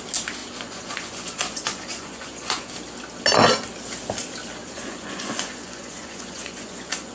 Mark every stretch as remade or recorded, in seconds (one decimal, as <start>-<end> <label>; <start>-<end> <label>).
0.0-0.4 recorded; 0.4-2.7 remade; 2.7-4.6 recorded; 4.6-7.1 remade